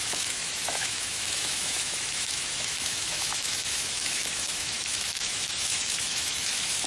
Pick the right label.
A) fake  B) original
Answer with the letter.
A